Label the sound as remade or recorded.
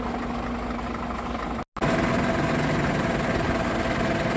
recorded